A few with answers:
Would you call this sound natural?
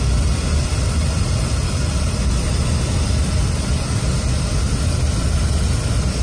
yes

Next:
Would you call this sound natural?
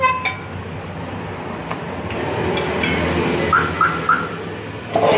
yes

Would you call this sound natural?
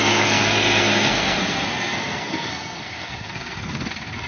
no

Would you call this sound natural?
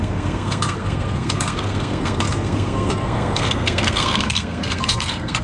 no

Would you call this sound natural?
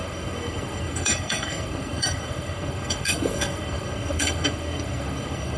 no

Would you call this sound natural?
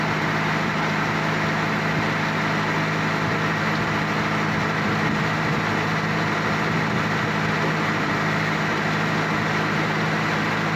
yes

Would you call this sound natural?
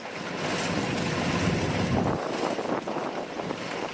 yes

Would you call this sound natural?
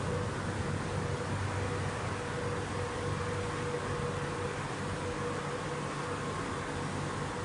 yes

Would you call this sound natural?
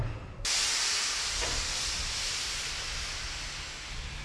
yes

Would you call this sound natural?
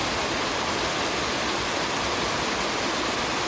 yes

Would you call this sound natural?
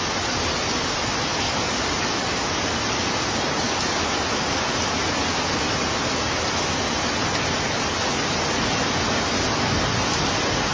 yes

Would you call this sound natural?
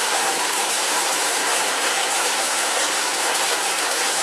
no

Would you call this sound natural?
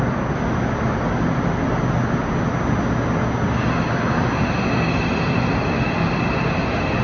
yes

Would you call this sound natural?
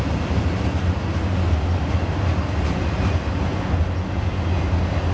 yes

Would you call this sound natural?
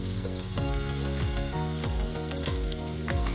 no